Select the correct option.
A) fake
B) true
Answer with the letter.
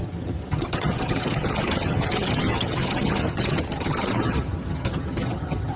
A